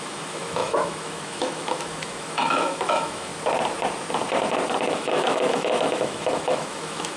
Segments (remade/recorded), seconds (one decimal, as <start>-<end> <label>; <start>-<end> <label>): 0.0-3.3 remade; 3.3-4.9 recorded; 4.9-7.2 remade